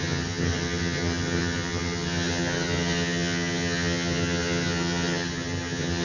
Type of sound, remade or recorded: remade